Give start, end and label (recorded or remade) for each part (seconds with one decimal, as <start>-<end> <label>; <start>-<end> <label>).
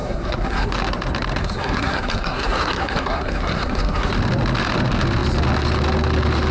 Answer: 0.0-0.7 remade; 0.7-1.4 recorded; 1.4-4.1 remade; 4.1-6.5 recorded